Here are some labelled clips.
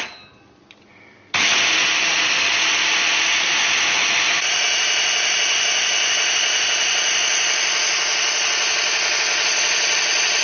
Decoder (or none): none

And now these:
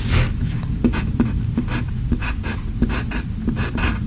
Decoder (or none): none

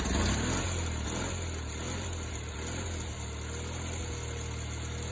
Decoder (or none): none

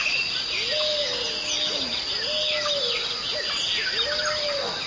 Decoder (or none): none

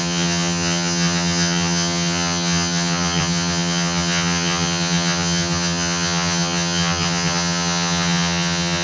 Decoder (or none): vocoder, HiFi-GAN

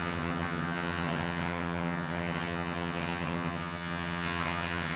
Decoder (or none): vocoder, HiFi-GAN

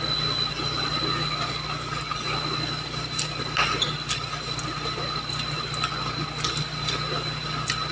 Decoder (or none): none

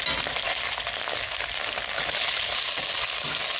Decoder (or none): none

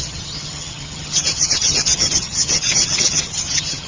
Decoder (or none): vocoder, HiFi-GAN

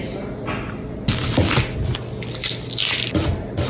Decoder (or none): none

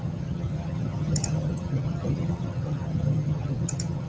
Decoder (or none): vocoder, HiFi-GAN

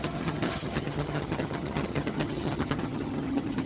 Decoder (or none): vocoder, HiFi-GAN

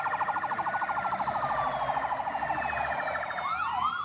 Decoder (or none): none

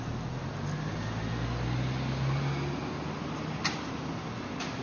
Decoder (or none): none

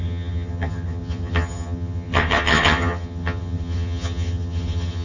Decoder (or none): vocoder, HiFi-GAN